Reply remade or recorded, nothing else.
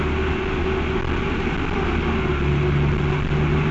recorded